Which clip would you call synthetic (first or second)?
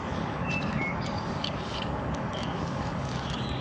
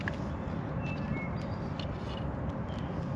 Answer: first